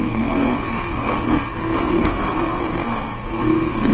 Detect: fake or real fake